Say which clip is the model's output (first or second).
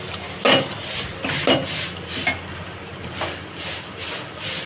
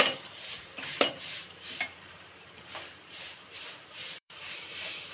second